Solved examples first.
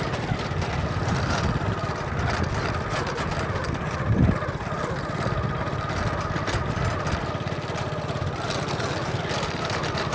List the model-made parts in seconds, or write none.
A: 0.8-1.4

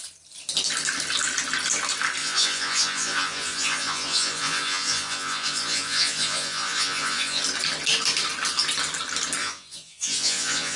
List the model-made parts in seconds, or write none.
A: 2.2-7.4; 9.4-10.8

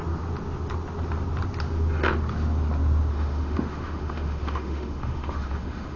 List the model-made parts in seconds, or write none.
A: 3.1-6.0

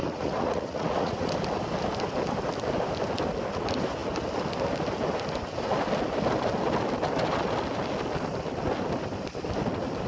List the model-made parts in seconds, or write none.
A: 0.0-1.3

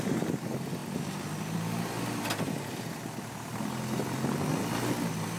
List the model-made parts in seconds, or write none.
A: none

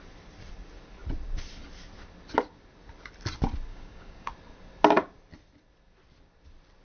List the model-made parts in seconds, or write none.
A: 3.7-4.3

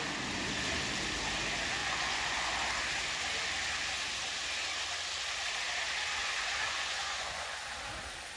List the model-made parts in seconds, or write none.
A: 1.8-2.5; 6.2-7.7